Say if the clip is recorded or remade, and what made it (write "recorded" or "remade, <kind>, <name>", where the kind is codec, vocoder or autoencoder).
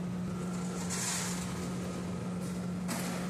recorded